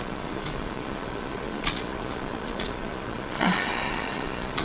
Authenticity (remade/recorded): remade